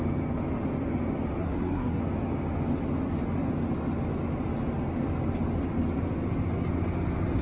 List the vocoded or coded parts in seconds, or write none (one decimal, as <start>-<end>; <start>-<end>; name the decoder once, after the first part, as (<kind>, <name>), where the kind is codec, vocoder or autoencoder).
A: 1.4-2.0 (codec, SNAC)